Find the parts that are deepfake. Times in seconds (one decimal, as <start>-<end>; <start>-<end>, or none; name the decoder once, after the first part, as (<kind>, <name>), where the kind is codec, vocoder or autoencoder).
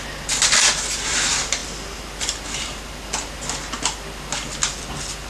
none